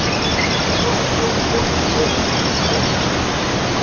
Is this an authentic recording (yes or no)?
yes